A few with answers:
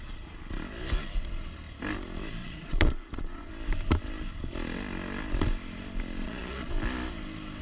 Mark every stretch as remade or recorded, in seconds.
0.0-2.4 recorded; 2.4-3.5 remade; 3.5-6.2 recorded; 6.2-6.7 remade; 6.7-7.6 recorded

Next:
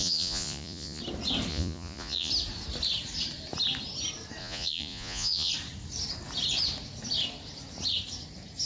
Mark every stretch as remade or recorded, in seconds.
0.0-1.0 remade; 1.0-1.5 recorded; 1.5-2.3 remade; 2.3-4.4 recorded; 4.4-5.5 remade; 5.5-8.7 recorded

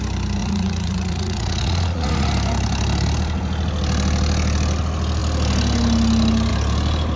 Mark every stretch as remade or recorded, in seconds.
0.0-0.4 recorded; 0.4-2.3 remade; 2.3-7.2 recorded